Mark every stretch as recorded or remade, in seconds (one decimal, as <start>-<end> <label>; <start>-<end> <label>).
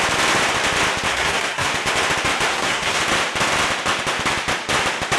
0.0-1.1 recorded; 1.1-1.7 remade; 1.7-2.5 recorded; 2.5-3.0 remade; 3.0-5.2 recorded